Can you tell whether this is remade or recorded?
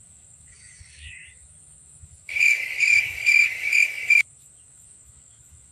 remade